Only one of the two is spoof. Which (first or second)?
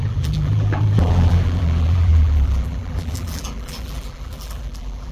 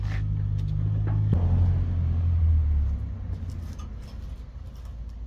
first